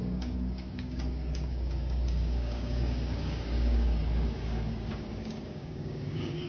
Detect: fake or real fake